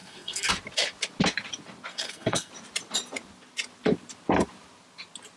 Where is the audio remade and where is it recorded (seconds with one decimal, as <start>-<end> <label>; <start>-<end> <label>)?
0.0-0.5 remade; 0.5-1.9 recorded; 1.9-2.5 remade; 2.5-5.4 recorded